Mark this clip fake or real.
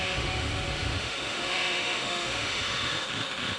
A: fake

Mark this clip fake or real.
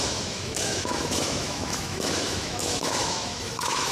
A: fake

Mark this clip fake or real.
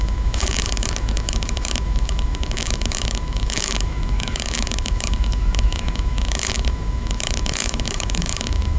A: fake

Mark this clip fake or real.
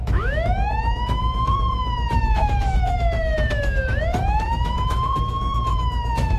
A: fake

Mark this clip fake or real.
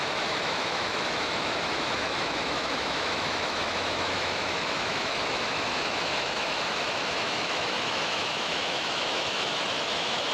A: fake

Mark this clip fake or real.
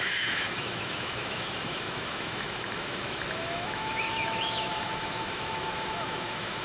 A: fake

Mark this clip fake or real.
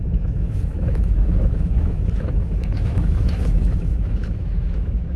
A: fake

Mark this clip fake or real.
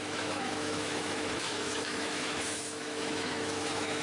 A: fake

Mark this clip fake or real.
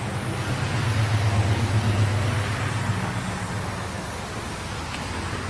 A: real